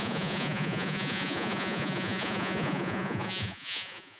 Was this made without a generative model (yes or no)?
no